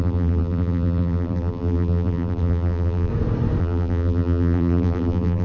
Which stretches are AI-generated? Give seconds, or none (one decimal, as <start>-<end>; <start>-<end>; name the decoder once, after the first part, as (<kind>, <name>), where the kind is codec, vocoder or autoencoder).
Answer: 0.0-3.1 (vocoder, BigVGAN v2); 3.6-5.4